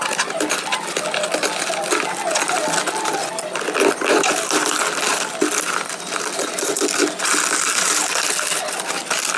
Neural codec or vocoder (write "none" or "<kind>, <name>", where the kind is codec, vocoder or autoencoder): none